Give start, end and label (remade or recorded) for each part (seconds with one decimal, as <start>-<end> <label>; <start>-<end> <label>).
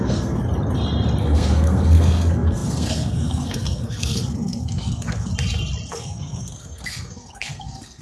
0.0-0.4 remade; 0.4-1.2 recorded; 1.2-5.3 remade; 5.3-5.9 recorded; 5.9-8.0 remade